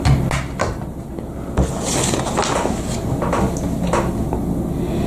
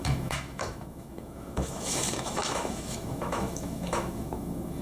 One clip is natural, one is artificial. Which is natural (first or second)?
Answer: first